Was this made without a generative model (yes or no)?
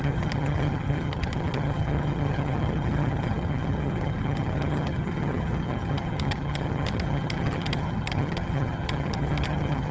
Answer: no